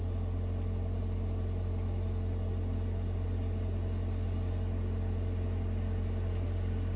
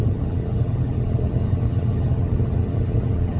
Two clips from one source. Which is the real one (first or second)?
first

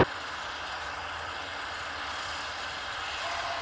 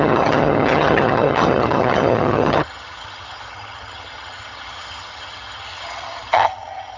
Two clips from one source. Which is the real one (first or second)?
first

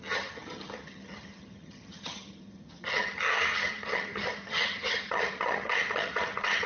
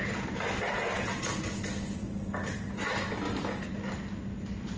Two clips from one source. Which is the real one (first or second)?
second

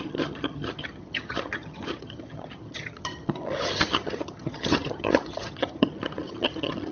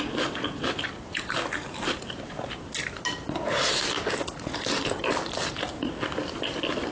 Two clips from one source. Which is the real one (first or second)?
second